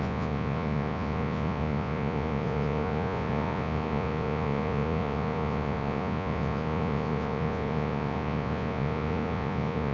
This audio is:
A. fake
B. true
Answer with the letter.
A